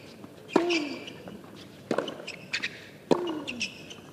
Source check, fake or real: real